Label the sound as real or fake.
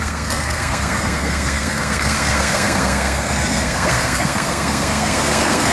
fake